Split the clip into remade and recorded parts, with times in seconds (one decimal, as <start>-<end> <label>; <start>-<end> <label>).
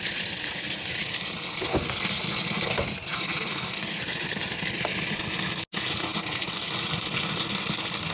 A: 0.0-3.1 recorded; 3.1-4.8 remade; 4.8-8.1 recorded